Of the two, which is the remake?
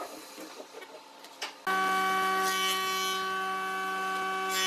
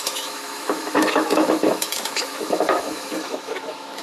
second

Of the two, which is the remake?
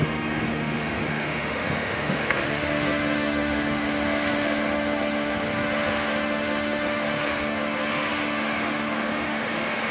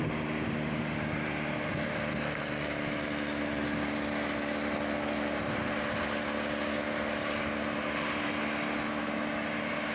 first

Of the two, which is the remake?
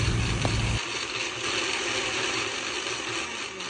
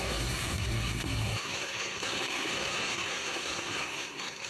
second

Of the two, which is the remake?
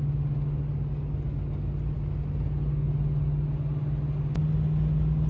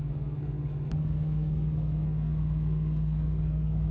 second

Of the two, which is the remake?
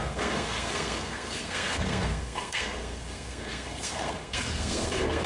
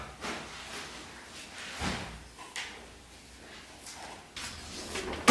first